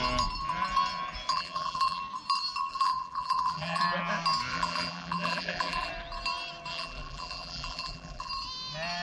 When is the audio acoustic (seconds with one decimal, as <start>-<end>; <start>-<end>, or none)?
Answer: 0.0-1.3; 2.0-2.7; 3.8-4.5; 5.9-6.7; 8.3-9.0